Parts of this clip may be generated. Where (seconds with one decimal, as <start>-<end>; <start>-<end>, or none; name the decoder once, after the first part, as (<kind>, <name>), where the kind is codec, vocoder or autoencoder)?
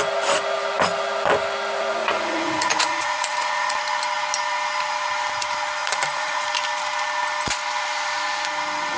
2.0-3.8 (vocoder, Vocos); 5.8-6.4